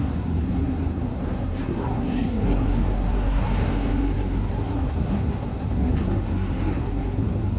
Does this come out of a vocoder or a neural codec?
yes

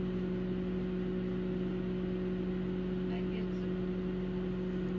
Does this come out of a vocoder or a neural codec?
no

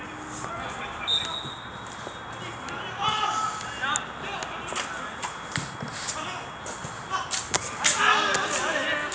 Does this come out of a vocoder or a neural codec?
no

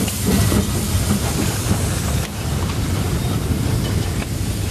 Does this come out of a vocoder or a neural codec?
no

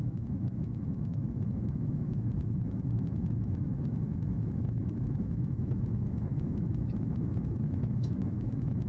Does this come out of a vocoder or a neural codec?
yes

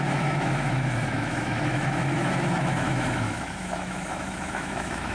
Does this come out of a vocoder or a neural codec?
yes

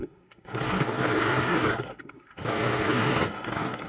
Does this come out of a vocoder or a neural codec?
yes